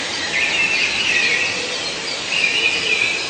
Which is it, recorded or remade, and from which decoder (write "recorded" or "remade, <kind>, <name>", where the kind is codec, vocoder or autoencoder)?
recorded